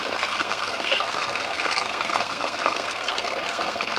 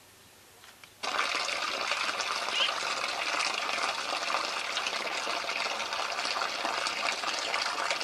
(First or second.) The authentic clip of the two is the second